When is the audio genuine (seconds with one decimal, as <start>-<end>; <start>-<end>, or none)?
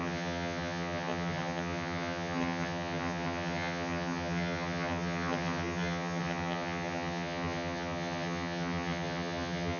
none